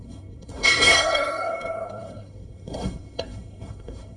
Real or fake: fake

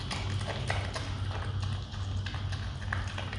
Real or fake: real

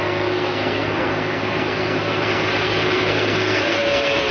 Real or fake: fake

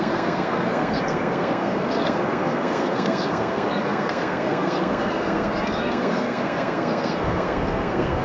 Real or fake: fake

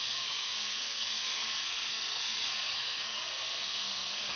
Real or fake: fake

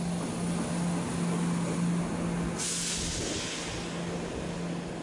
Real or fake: real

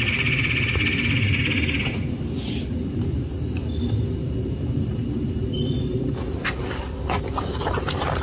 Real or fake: real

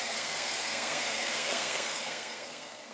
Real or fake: fake